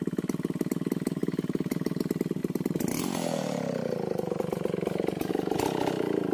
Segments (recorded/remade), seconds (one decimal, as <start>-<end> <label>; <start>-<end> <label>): 0.0-1.2 recorded; 1.2-2.0 remade; 2.0-2.4 recorded; 2.4-5.3 remade; 5.3-6.3 recorded